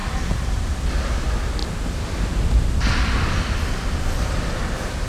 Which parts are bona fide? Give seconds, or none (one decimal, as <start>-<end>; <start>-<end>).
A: 0.7-5.1